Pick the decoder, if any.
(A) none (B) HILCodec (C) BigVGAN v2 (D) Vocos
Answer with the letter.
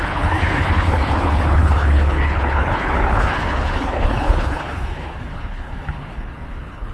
B